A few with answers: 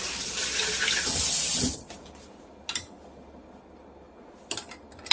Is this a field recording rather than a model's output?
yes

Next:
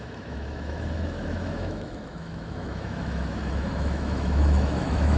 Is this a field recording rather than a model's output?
no